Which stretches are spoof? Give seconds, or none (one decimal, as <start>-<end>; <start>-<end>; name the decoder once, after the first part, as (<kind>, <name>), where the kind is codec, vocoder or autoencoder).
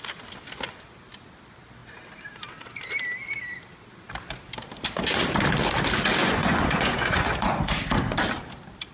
6.2-7.6 (vocoder, Vocos)